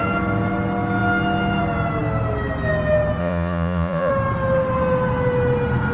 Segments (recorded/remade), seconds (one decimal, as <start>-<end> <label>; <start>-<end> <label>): 0.0-3.2 recorded; 3.2-4.1 remade; 4.1-5.9 recorded